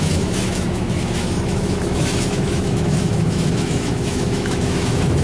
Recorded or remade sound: remade